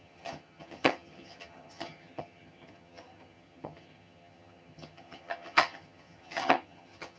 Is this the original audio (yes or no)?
no